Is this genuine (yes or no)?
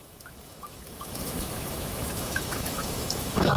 no